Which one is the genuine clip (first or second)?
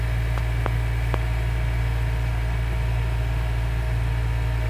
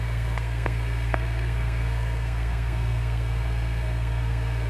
first